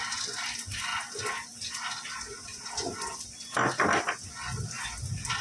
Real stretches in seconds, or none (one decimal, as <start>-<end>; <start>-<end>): 0.0-5.4